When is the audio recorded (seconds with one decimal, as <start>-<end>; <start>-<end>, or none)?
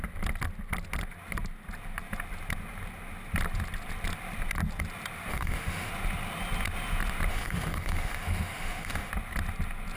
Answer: 0.0-5.3; 5.9-7.3; 9.1-10.0